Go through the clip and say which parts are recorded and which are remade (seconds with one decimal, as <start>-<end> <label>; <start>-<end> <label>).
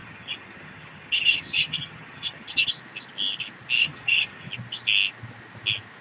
0.0-2.7 remade; 2.7-3.8 recorded; 3.8-4.5 remade; 4.5-6.0 recorded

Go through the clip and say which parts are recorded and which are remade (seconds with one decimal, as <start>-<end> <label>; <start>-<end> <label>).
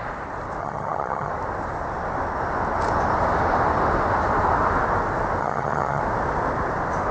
0.0-0.6 recorded; 0.6-1.3 remade; 1.3-5.4 recorded; 5.4-6.0 remade; 6.0-7.1 recorded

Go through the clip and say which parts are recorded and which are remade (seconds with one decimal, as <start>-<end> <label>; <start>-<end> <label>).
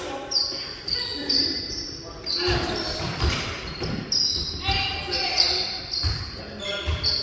0.0-7.2 recorded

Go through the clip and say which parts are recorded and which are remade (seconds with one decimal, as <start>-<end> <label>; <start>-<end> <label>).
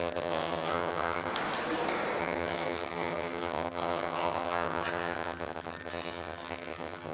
0.0-1.3 remade; 1.3-2.2 recorded; 2.2-7.1 remade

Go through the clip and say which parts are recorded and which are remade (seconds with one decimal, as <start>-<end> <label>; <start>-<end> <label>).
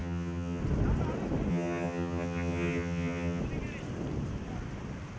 0.0-0.6 remade; 0.6-1.5 recorded; 1.5-3.4 remade; 3.4-5.2 recorded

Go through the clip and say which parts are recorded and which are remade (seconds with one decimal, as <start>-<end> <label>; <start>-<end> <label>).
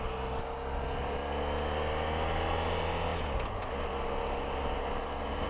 0.0-5.5 recorded